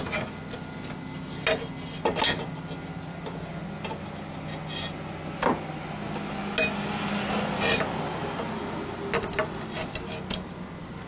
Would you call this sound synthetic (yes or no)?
no